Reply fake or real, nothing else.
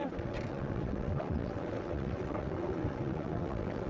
fake